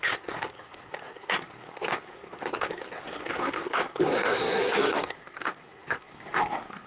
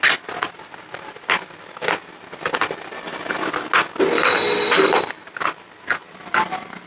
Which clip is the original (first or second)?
second